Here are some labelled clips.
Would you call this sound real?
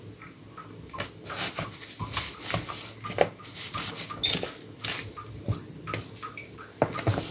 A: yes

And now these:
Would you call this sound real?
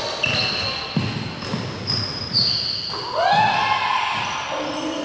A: yes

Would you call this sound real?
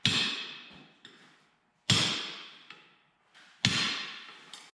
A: yes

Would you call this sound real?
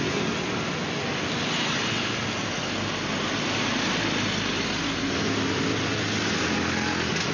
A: yes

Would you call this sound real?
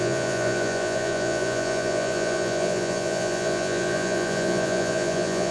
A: no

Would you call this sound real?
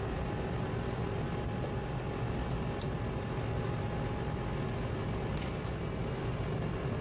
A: yes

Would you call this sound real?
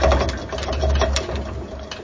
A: yes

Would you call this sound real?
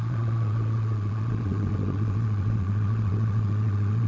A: no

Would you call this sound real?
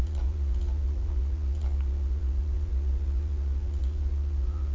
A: no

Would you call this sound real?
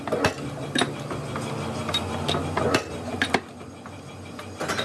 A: yes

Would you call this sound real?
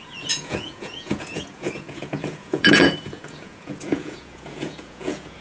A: no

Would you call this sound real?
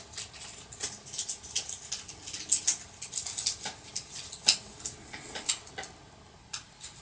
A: yes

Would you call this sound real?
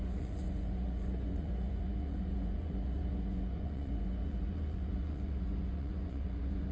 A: no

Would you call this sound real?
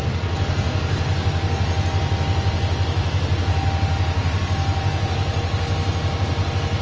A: yes